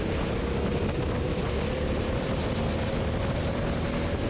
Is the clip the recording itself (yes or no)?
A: yes